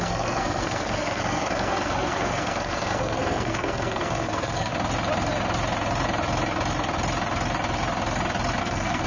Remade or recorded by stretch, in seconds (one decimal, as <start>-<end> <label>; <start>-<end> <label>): 0.0-4.7 remade; 4.7-8.6 recorded; 8.6-9.1 remade